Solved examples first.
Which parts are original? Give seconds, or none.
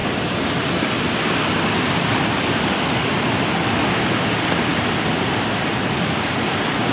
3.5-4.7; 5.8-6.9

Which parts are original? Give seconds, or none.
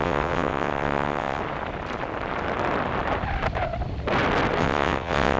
1.4-4.6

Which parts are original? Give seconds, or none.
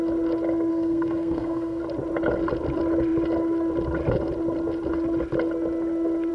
0.0-0.7; 1.8-6.3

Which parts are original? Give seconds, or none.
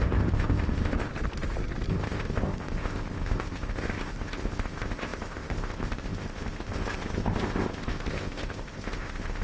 1.1-1.9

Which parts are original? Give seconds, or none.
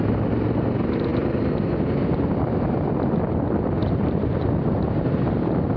0.0-5.8